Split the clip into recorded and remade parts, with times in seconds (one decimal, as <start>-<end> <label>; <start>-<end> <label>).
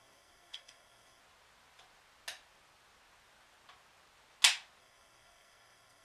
0.0-1.2 remade; 1.2-4.8 recorded; 4.8-6.0 remade